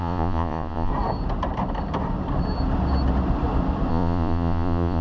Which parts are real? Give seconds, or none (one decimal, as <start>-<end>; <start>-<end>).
0.9-3.9